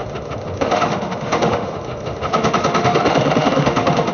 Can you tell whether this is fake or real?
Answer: fake